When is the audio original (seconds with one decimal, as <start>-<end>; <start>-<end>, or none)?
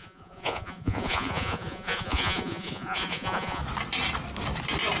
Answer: 3.6-5.0